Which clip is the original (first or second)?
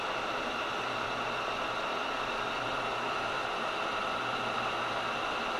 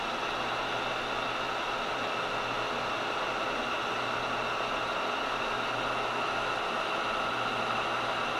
second